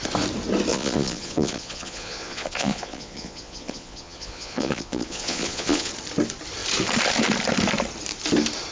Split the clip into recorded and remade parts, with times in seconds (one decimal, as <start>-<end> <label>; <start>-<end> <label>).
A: 0.0-0.7 recorded; 0.7-5.9 remade; 5.9-8.7 recorded